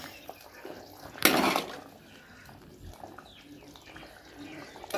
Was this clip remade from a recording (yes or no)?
no